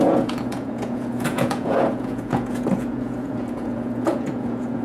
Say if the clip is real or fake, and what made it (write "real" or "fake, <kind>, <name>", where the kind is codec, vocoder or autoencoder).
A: fake, vocoder, Vocos